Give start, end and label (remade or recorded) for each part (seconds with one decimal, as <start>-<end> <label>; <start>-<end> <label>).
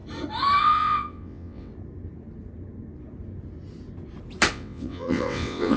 0.0-0.6 recorded; 0.6-1.7 remade; 1.7-4.5 recorded; 4.5-5.8 remade